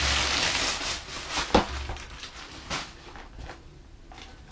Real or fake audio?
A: real